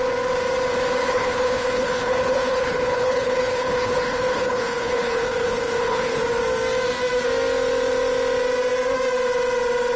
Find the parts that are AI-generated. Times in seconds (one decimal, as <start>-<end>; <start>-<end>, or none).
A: 1.0-6.2